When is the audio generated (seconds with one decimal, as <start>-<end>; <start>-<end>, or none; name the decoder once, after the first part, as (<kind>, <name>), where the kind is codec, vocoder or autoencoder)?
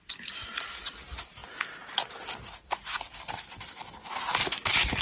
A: none